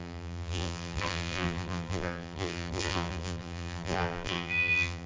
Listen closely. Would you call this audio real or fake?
fake